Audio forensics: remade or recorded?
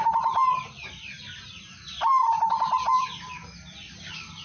recorded